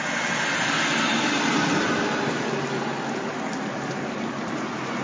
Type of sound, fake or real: real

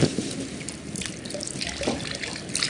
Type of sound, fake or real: real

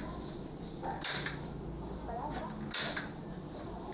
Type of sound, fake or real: real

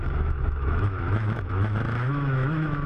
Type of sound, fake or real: fake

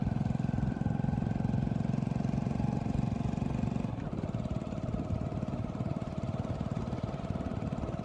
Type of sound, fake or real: real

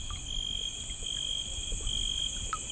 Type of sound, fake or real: real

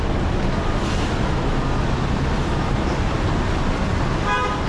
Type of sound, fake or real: real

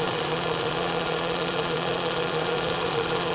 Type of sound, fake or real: fake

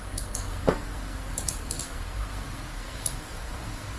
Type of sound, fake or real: fake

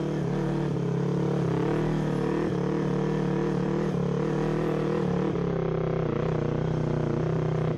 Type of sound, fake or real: real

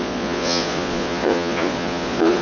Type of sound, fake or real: fake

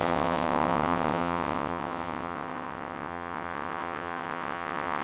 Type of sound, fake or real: fake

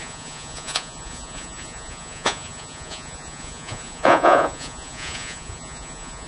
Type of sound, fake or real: fake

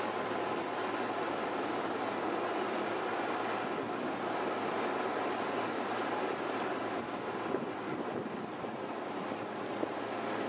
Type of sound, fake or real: real